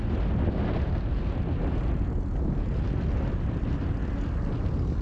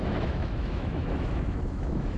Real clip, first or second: first